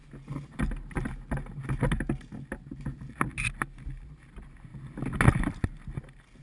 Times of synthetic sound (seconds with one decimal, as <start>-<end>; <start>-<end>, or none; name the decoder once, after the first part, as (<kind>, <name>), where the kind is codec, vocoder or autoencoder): none